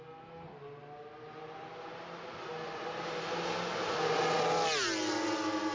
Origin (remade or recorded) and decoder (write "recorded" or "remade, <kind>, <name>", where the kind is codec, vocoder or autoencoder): recorded